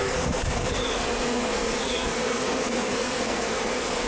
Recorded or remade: remade